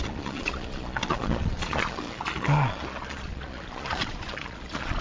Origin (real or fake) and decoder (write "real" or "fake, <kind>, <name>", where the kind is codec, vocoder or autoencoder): fake, vocoder, Vocos